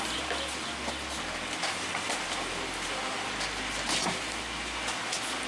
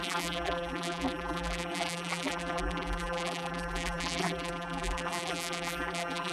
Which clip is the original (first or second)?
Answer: first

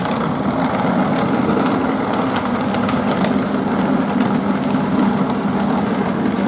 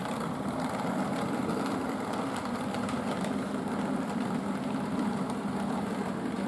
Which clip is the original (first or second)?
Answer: first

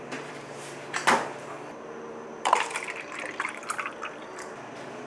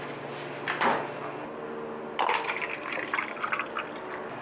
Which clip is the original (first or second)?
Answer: second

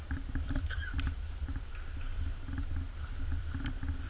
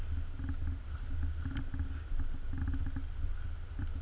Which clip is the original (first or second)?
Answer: second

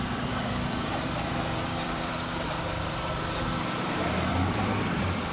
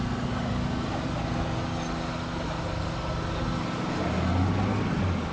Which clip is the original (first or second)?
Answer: second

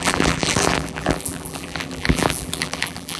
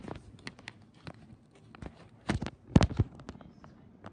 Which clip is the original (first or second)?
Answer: second